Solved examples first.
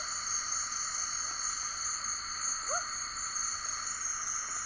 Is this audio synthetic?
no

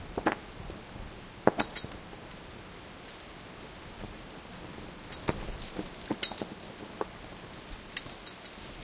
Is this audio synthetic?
no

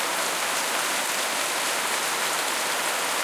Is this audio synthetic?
no